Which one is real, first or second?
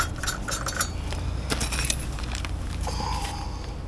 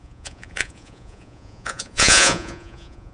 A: first